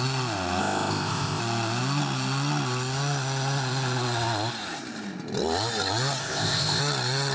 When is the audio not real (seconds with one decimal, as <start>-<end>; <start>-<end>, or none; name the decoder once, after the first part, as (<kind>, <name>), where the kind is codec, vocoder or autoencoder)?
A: 0.6-1.4 (codec, ZipCodec); 6.2-6.8